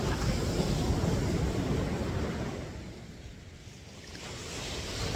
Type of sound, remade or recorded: recorded